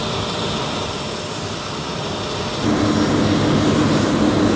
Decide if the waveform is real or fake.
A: real